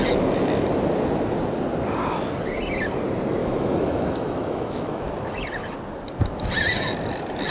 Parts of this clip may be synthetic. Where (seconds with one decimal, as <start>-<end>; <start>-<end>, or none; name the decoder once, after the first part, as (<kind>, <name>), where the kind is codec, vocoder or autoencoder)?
3.4-5.0 (autoencoder, DAC-VAE)